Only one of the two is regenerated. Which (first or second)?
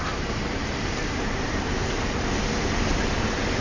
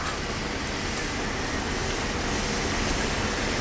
first